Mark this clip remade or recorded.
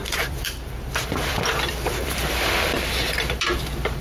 remade